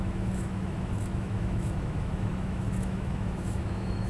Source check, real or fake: fake